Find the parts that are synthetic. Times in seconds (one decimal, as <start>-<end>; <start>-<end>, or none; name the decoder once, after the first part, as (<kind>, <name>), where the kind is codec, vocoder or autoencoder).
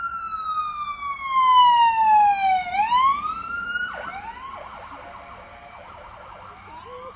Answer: none